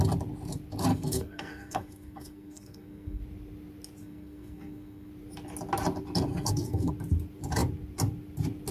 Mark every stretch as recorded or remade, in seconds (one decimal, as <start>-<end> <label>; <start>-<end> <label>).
0.0-0.9 recorded; 0.9-3.2 remade; 3.2-4.0 recorded; 4.0-5.1 remade; 5.1-6.3 recorded; 6.3-6.9 remade; 6.9-8.7 recorded